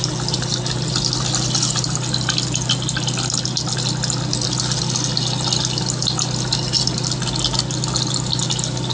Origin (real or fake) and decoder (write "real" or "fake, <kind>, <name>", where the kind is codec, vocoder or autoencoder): real